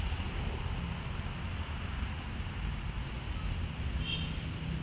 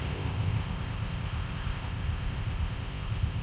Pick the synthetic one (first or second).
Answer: second